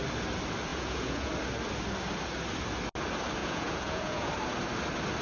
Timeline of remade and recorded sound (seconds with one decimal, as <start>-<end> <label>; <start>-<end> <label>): 0.0-0.7 recorded; 0.7-1.3 remade; 1.3-3.4 recorded; 3.4-4.3 remade; 4.3-5.2 recorded